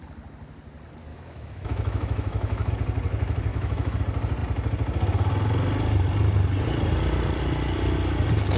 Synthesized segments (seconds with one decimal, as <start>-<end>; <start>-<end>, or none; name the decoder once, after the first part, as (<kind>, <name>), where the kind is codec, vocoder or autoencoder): 1.1-2.7 (autoencoder, DAC-VAE); 3.5-4.0